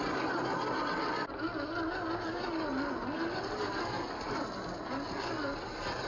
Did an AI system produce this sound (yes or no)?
no